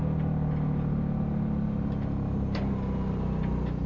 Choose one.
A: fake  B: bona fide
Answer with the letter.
B